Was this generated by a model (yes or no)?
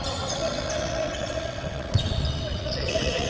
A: yes